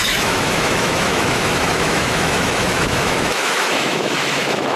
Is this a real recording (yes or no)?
no